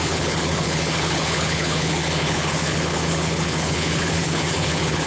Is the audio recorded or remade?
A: remade